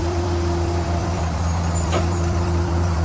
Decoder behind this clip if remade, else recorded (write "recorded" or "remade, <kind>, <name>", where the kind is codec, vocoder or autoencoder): remade, vocoder, BigVGAN v2